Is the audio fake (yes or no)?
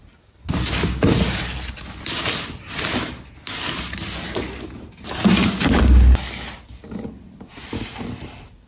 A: no